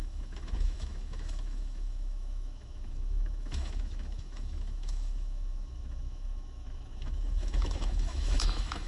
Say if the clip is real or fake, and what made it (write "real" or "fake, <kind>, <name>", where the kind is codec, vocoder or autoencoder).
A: fake, autoencoder, DAC-VAE